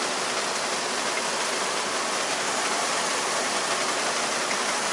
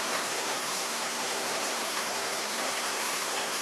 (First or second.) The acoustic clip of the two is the first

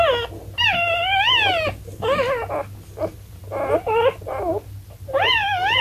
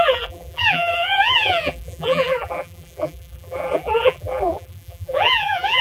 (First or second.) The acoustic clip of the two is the first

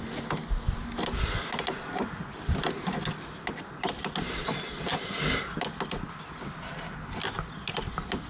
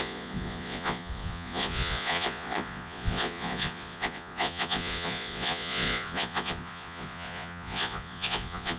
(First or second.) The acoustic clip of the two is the first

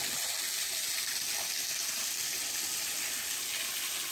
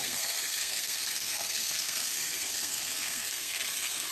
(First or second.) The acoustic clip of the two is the first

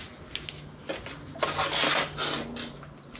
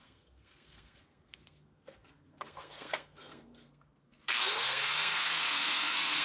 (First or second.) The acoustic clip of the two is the first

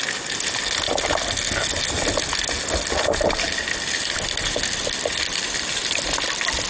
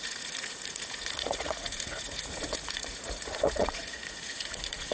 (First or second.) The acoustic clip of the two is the first